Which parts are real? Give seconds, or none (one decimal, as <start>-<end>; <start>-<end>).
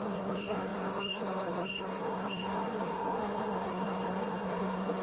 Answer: none